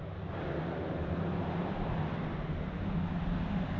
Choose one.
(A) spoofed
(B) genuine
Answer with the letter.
B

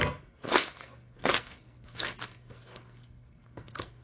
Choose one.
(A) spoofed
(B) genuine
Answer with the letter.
A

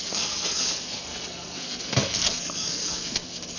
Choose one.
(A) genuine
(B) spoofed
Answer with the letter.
B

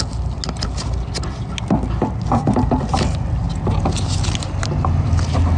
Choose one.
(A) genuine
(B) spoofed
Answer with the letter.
A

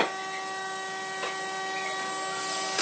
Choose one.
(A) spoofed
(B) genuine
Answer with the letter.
B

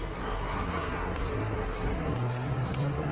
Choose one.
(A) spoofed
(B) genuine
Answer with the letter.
A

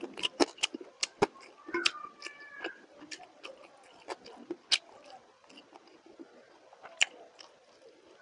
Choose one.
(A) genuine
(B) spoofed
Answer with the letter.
A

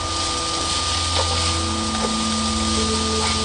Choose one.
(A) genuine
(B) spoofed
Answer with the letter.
A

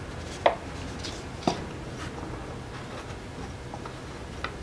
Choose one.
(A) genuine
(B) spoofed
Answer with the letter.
A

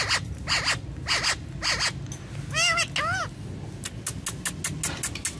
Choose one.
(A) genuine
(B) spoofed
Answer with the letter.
A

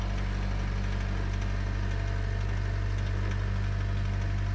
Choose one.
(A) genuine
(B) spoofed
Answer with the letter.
A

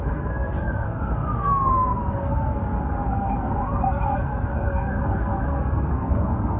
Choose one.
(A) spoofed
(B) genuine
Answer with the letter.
A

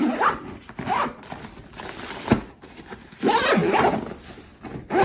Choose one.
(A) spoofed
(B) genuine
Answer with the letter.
B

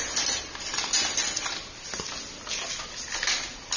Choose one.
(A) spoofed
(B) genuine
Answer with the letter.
B